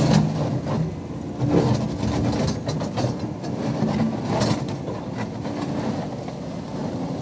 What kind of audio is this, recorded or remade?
recorded